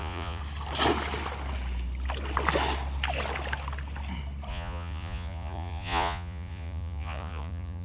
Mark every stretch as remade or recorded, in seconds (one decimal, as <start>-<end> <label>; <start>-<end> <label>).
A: 0.0-0.4 remade; 0.4-4.5 recorded; 4.5-7.8 remade